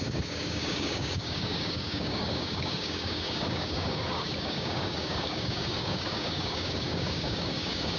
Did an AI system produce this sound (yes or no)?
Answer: yes